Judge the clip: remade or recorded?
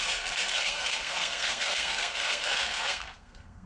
remade